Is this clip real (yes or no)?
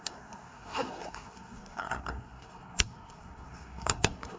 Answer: no